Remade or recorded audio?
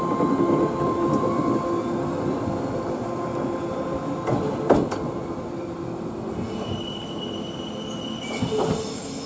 recorded